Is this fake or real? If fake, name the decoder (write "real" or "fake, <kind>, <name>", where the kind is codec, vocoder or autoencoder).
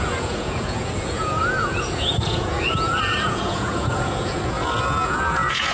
fake, vocoder, Vocos